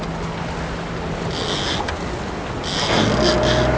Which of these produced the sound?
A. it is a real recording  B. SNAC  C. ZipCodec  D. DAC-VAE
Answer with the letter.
A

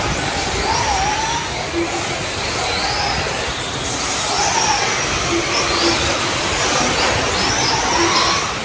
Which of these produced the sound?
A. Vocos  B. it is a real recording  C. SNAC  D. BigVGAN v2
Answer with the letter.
B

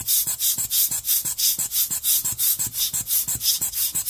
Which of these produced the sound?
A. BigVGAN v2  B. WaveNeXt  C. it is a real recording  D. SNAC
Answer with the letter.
C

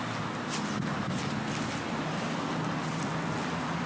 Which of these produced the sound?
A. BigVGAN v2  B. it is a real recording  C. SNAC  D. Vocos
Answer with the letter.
B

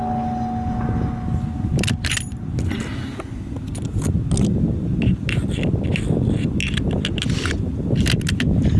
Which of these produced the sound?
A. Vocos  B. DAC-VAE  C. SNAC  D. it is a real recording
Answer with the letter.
D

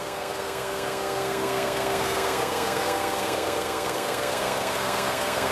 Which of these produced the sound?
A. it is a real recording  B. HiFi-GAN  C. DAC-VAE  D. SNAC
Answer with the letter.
D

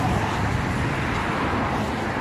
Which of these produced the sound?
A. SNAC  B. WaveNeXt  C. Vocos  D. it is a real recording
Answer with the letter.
D